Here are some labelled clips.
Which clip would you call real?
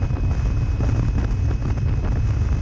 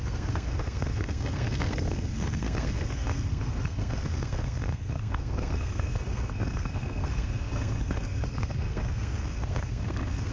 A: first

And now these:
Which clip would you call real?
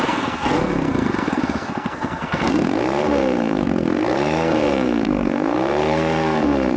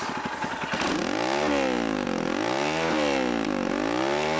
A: second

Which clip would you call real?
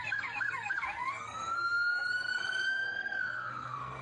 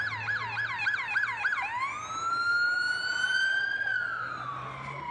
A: second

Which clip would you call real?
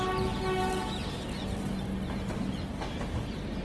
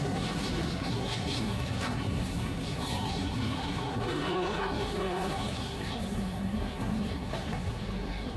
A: first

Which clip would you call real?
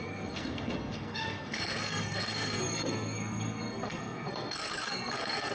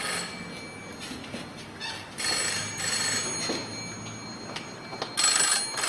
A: second